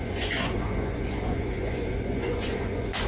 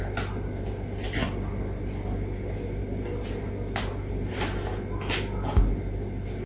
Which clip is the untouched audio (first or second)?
second